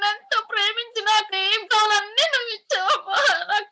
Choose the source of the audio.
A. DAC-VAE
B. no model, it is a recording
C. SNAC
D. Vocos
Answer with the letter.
B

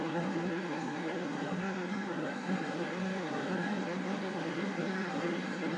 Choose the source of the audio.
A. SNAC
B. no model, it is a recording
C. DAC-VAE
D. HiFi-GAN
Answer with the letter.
A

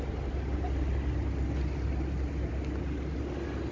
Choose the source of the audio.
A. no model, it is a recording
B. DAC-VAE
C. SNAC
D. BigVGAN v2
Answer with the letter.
A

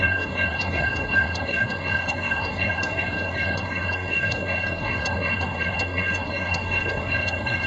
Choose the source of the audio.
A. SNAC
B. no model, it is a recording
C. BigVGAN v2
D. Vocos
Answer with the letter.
A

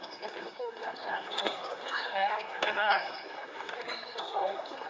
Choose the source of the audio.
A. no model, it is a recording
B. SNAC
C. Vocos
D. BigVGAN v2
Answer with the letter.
B